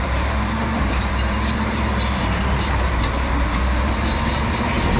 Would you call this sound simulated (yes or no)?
yes